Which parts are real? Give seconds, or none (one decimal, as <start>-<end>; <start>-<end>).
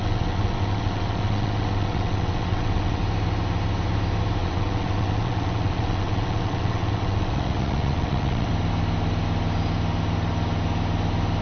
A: 3.0-4.4; 8.5-11.4